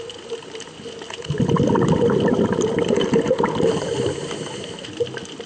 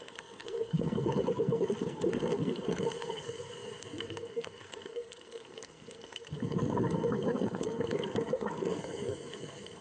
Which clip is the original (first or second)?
first